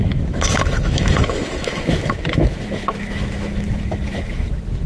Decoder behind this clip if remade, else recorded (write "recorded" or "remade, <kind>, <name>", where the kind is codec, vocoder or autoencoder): remade, autoencoder, DAC-VAE